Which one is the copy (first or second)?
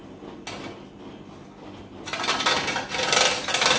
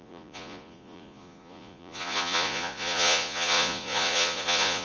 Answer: second